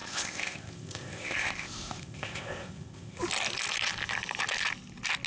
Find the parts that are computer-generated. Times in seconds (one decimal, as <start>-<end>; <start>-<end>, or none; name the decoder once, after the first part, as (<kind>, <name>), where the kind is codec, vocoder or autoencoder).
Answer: 0.0-3.2 (codec, ZipCodec)